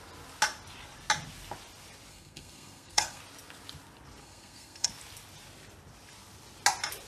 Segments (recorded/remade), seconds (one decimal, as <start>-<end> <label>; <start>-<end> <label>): 0.0-2.1 recorded; 2.1-3.2 remade; 3.2-4.2 recorded; 4.2-4.9 remade; 4.9-7.1 recorded